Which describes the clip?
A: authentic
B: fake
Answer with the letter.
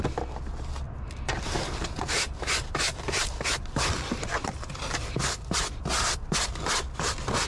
A